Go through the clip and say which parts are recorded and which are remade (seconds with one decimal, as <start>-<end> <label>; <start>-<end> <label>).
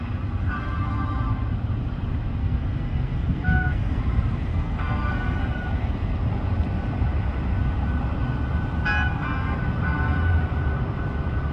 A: 0.0-2.4 recorded; 2.4-4.0 remade; 4.0-4.5 recorded; 4.5-5.4 remade; 5.4-11.5 recorded